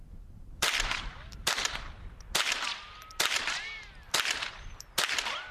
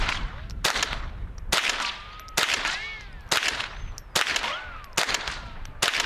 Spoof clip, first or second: first